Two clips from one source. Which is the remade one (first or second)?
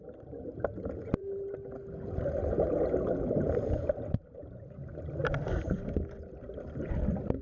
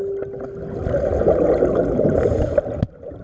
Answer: first